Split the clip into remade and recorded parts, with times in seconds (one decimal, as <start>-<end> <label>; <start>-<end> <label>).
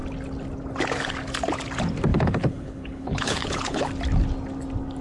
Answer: 0.0-2.1 recorded; 2.1-3.9 remade; 3.9-5.0 recorded